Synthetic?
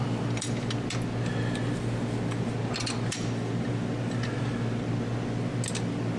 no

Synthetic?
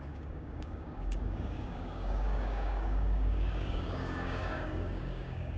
yes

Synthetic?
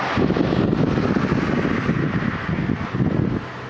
no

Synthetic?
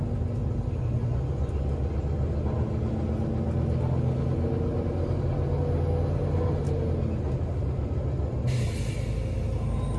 no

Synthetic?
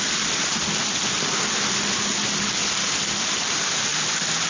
no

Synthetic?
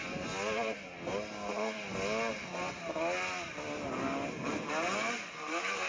no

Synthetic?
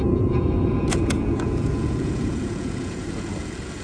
yes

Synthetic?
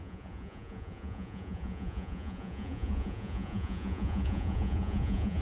yes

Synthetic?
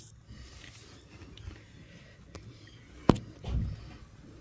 no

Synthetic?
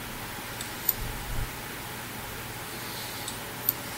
no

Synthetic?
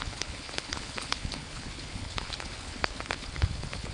yes